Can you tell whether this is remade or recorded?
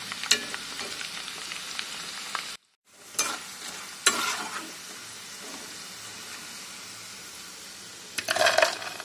recorded